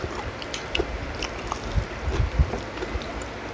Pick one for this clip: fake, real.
real